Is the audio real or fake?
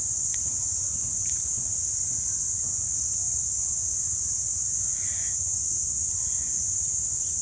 fake